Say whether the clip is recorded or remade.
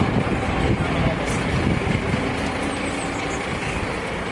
recorded